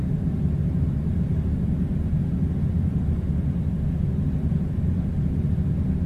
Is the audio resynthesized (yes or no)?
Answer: no